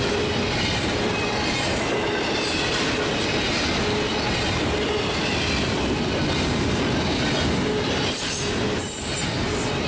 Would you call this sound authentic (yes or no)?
yes